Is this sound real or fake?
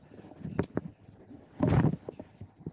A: real